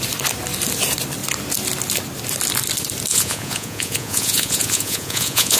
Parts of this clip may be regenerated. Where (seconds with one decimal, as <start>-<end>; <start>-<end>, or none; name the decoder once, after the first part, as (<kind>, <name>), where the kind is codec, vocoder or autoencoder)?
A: 3.1-5.6 (vocoder, Vocos)

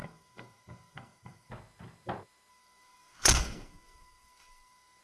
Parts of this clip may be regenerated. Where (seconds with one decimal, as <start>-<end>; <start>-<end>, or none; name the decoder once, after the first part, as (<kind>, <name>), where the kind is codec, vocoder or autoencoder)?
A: 0.0-1.5 (codec, SNAC); 2.5-5.0

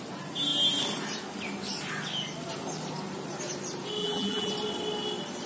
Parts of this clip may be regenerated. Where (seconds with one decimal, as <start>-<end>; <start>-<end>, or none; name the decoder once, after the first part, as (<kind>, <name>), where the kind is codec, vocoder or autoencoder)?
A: 4.0-4.5 (vocoder, BigVGAN v2)